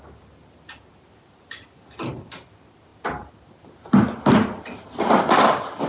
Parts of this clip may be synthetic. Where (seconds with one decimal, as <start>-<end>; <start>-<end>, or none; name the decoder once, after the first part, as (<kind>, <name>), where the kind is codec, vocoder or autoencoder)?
none